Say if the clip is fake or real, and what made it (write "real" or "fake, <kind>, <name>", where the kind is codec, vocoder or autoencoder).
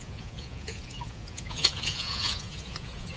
fake, vocoder, Vocos